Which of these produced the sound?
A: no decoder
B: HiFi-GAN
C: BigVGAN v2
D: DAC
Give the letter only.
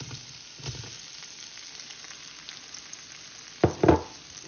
A